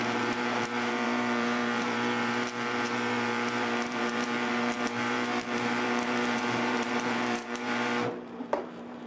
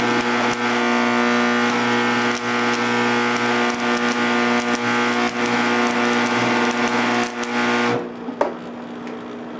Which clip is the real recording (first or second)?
second